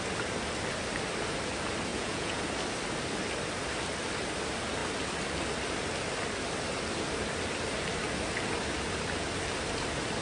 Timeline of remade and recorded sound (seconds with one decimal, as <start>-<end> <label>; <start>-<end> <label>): 0.0-1.9 recorded; 1.9-2.4 remade; 2.4-10.2 recorded